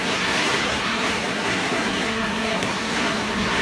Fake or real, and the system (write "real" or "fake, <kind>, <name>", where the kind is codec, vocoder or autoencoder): fake, codec, SNAC